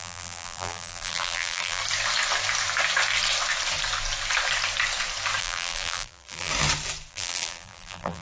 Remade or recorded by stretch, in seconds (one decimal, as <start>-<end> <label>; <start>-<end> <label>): 0.0-1.8 remade; 1.8-5.4 recorded; 5.4-6.5 remade; 6.5-7.1 recorded; 7.1-8.2 remade